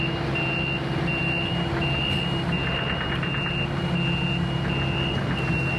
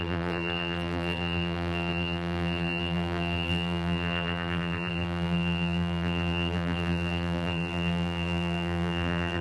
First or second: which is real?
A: first